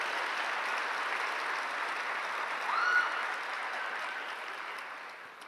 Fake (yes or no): no